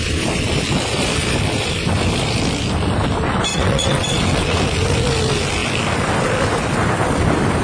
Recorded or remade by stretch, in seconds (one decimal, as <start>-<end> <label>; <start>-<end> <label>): 0.0-3.5 recorded; 3.5-4.6 remade; 4.6-7.6 recorded